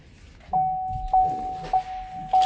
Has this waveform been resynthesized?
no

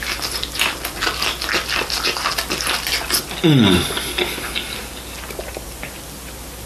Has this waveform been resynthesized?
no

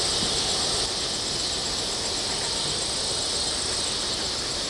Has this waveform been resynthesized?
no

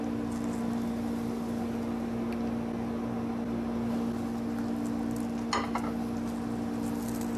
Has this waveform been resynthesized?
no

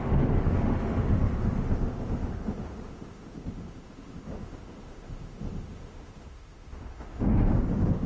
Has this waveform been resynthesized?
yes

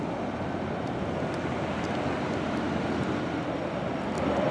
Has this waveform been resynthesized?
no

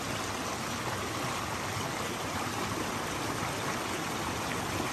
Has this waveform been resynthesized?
no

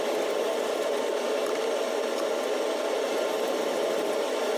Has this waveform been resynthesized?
no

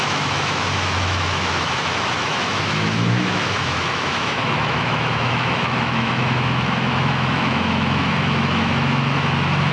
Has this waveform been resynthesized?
yes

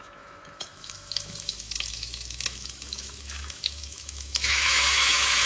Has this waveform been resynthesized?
yes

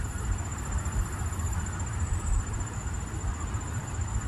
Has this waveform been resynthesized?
no